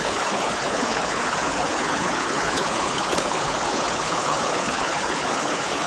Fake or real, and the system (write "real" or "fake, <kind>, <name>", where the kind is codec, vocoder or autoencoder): fake, codec, HILCodec